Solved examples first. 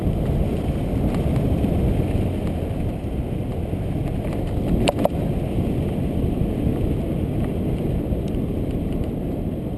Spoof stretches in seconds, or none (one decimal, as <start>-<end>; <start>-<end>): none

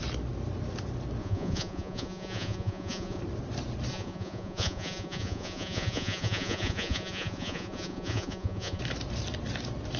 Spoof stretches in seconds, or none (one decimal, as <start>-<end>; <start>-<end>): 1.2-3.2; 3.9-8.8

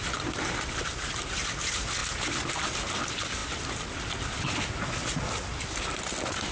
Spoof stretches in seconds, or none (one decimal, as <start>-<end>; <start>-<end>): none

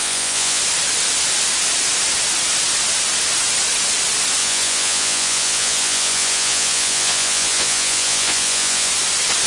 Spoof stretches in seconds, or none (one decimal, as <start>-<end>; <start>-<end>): 0.0-0.6; 4.4-8.9